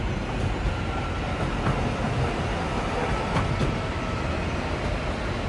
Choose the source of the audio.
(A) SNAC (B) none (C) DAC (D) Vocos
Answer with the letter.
B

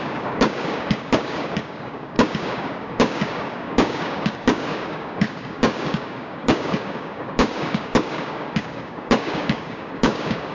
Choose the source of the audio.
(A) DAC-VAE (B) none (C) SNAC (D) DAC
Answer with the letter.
D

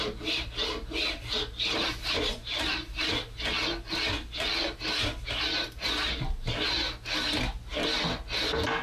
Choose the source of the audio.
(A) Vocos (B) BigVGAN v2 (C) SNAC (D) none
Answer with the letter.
D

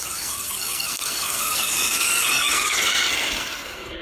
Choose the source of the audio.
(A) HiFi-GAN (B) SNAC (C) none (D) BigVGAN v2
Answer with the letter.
B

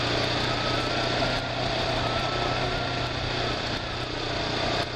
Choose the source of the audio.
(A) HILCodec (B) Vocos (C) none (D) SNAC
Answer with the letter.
C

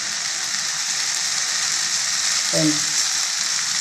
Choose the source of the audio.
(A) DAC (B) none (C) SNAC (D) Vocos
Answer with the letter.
B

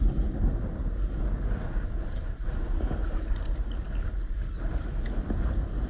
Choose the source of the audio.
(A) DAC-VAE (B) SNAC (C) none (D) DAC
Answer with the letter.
C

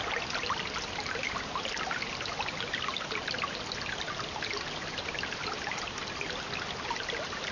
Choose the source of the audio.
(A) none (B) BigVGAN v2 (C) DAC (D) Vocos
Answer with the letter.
A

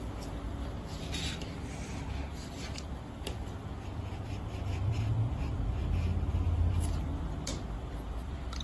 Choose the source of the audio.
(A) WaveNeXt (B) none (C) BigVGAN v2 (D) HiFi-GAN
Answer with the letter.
C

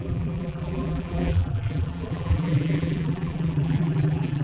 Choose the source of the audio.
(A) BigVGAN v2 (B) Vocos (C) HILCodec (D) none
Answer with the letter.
A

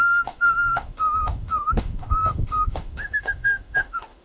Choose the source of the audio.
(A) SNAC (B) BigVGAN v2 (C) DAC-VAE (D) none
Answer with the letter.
C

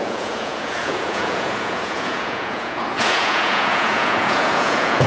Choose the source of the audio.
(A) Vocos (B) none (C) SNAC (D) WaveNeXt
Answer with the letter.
A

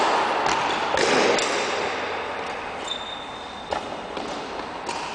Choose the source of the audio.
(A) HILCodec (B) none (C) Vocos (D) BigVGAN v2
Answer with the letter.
B